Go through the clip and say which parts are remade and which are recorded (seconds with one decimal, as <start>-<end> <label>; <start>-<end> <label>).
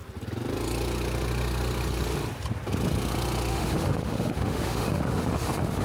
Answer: 0.0-3.5 recorded; 3.5-5.8 remade